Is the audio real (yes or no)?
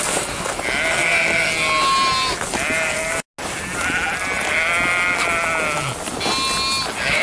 yes